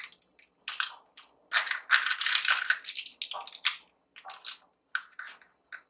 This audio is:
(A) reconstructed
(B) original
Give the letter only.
B